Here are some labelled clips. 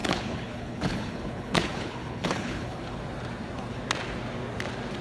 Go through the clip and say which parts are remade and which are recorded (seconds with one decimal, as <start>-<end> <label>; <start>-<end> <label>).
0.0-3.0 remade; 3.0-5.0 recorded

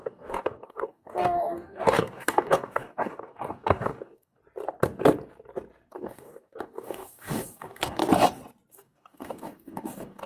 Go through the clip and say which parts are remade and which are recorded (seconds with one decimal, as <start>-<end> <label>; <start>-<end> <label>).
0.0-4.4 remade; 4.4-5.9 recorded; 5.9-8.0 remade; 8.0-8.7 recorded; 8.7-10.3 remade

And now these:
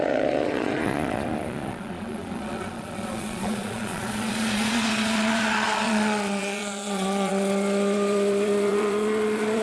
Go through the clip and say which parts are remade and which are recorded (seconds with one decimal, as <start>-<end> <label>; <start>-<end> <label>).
0.0-9.6 remade

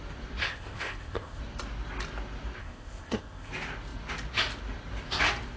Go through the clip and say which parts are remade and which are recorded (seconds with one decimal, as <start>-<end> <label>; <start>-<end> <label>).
0.0-0.4 recorded; 0.4-1.4 remade; 1.4-2.6 recorded; 2.6-3.5 remade; 3.5-5.6 recorded